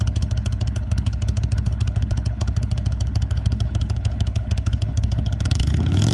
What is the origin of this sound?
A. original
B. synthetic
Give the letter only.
B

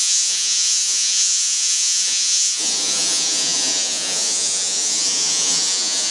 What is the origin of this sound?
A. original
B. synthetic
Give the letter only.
B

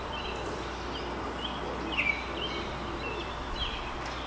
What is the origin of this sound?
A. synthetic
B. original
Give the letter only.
B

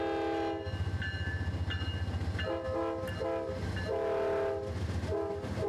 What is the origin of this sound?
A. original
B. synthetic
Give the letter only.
A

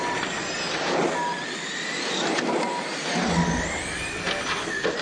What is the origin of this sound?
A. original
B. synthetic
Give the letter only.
A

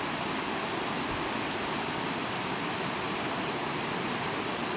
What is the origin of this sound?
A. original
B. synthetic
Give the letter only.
A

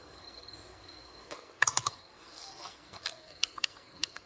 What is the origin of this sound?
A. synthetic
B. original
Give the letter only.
A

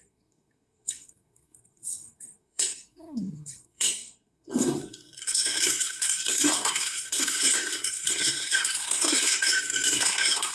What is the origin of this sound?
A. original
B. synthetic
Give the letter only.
B